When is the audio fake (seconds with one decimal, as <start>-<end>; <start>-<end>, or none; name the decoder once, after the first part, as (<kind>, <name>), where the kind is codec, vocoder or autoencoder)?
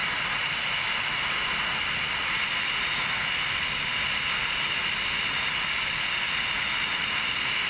none